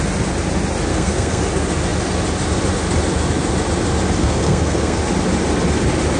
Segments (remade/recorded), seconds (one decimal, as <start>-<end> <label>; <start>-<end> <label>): 0.0-0.9 recorded; 0.9-1.4 remade; 1.4-4.2 recorded; 4.2-5.0 remade; 5.0-6.2 recorded

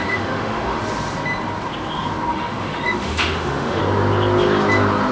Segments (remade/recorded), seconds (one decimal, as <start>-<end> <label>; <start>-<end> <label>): 0.0-0.8 remade; 0.8-2.3 recorded; 2.3-3.8 remade; 3.8-5.1 recorded

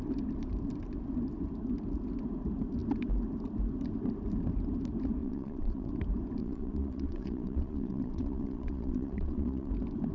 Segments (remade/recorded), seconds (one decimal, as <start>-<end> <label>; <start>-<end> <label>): 0.0-5.2 recorded; 5.2-5.9 remade; 5.9-6.4 recorded; 6.4-9.7 remade; 9.7-10.1 recorded

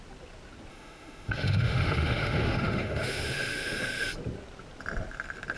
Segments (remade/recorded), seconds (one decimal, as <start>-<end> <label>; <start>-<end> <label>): 0.0-0.7 recorded; 0.7-4.1 remade; 4.1-5.6 recorded

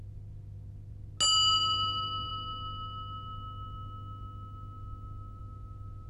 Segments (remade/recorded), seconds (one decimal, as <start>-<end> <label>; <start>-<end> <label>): 0.0-6.1 recorded

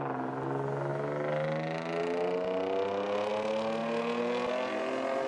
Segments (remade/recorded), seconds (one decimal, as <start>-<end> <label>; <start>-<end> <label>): 0.0-5.3 recorded